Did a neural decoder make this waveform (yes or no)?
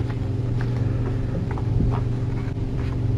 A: no